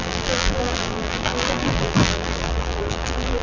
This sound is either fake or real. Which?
fake